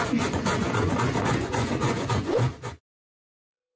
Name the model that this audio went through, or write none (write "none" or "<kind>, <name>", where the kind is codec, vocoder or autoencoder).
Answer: vocoder, Vocos